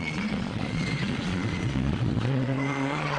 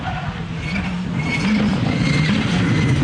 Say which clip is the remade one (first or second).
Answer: first